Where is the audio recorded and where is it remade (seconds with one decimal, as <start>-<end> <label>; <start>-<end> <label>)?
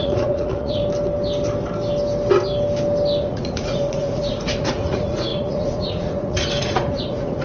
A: 0.0-0.8 remade; 0.8-3.2 recorded; 3.2-7.4 remade